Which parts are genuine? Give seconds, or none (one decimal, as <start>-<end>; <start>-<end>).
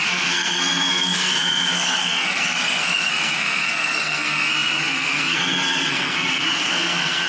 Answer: none